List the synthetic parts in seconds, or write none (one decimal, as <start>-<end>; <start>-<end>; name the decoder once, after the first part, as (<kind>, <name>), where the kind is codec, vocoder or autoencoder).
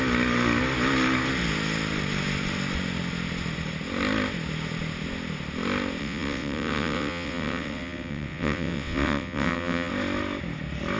6.0-9.9 (vocoder, WaveNeXt)